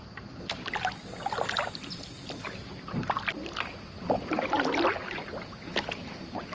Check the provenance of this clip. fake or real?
real